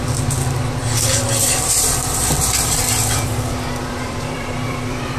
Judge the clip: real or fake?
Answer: fake